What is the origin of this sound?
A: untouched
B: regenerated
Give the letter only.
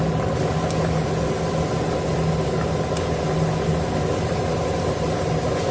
A